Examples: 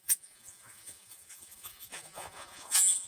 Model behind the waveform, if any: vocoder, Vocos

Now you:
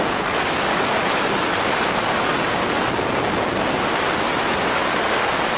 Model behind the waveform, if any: none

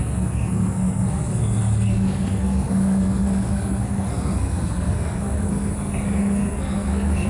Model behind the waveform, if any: codec, SNAC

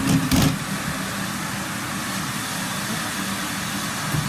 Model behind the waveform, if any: none